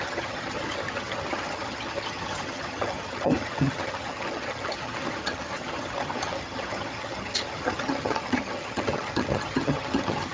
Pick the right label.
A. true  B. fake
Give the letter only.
B